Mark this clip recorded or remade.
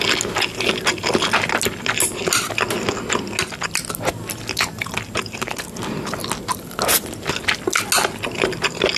recorded